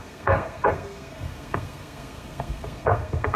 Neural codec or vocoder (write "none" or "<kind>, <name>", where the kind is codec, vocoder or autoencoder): codec, SNAC